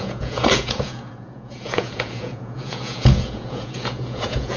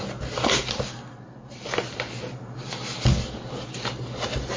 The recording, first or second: second